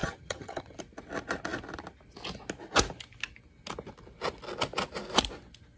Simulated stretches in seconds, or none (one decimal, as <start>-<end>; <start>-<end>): 0.0-0.8